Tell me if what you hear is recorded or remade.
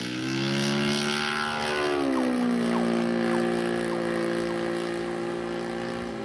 recorded